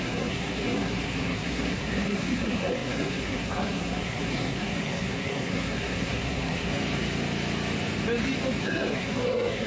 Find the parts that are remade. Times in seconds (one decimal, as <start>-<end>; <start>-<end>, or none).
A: 0.0-6.7; 8.6-9.7